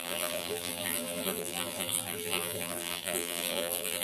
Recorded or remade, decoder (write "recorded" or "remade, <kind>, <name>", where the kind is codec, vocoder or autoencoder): remade, vocoder, BigVGAN v2